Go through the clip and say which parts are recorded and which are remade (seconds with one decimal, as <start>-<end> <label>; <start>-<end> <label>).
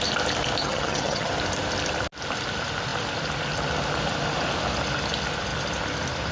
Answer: 0.0-0.6 recorded; 0.6-1.3 remade; 1.3-6.3 recorded